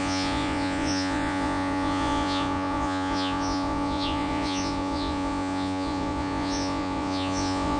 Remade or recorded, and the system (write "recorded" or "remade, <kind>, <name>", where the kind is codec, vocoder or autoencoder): remade, vocoder, Vocos